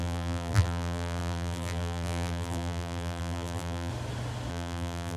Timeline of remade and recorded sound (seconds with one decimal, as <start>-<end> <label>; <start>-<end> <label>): 0.0-3.9 remade; 3.9-4.5 recorded; 4.5-5.2 remade